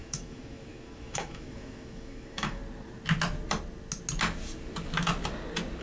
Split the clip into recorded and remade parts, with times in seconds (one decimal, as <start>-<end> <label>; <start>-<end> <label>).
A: 0.0-2.6 remade; 2.6-5.8 recorded